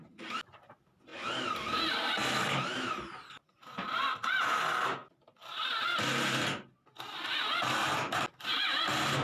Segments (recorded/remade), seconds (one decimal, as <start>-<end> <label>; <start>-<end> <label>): 0.0-9.2 recorded